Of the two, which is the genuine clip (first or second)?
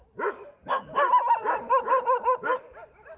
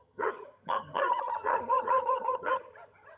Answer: first